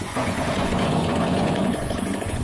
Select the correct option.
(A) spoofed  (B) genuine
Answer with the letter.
A